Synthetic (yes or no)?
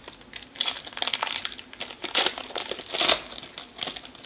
no